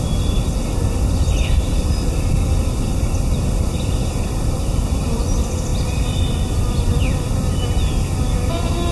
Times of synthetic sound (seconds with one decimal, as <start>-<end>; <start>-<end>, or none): 3.7-4.6